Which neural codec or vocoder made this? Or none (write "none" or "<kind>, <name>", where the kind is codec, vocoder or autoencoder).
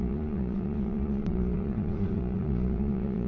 vocoder, Vocos